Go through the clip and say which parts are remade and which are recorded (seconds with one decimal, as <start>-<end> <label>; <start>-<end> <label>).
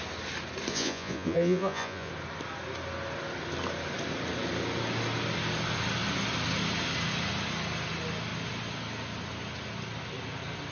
0.0-0.7 recorded; 0.7-2.1 remade; 2.1-10.7 recorded